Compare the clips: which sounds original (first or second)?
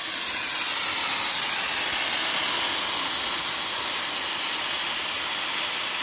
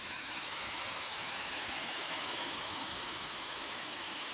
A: first